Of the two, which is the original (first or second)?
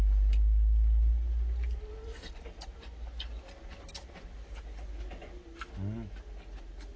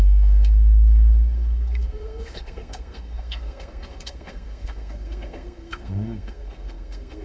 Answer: first